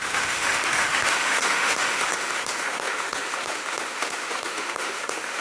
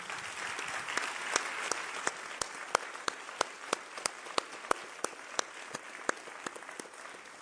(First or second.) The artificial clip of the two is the first